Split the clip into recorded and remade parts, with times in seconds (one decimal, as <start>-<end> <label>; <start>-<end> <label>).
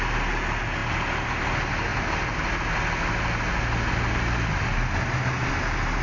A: 0.0-6.0 recorded